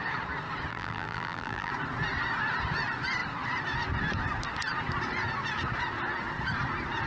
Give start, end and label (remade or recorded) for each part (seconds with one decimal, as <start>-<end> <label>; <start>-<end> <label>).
0.0-0.7 recorded; 0.7-1.7 remade; 1.7-7.1 recorded